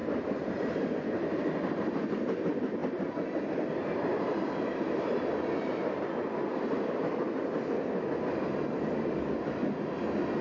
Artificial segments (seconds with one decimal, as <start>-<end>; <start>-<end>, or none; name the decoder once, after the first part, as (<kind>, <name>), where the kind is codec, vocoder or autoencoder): 0.0-0.9 (vocoder, BigVGAN v2)